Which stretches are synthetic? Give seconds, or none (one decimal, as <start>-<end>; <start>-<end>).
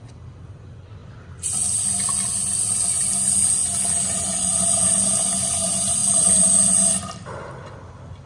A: none